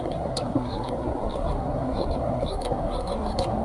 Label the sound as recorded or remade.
remade